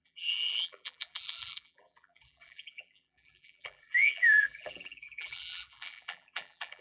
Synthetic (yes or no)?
yes